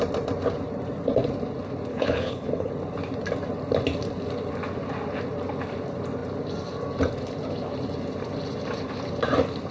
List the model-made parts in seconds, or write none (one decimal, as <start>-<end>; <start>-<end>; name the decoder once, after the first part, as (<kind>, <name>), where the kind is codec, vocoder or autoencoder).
1.9-2.7 (codec, HILCodec)